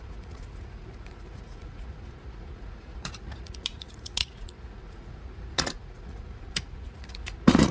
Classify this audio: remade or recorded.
remade